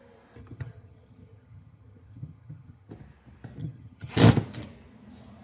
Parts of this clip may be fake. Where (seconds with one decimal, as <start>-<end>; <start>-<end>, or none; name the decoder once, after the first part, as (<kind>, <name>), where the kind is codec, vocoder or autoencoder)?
0.4-2.9 (vocoder, HiFi-GAN); 3.6-4.1